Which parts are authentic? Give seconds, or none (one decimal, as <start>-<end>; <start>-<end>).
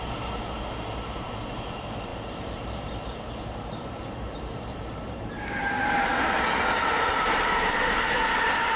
6.1-7.1